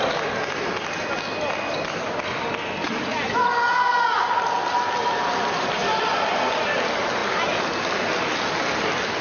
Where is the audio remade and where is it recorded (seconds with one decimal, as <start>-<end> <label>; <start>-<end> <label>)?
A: 0.0-9.2 recorded